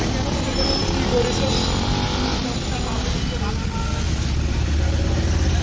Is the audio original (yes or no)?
yes